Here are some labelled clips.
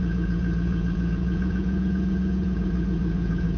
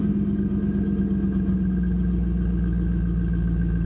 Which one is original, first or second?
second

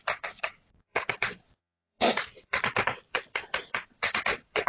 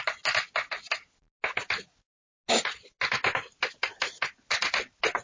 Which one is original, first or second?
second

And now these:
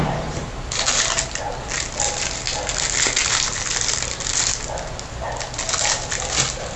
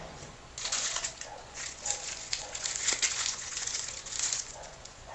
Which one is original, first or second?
first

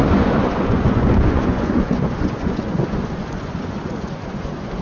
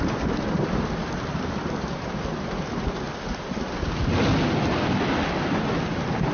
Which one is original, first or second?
second